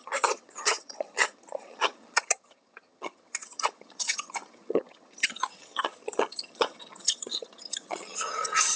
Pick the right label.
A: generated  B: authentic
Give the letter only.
A